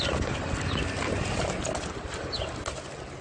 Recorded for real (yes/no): yes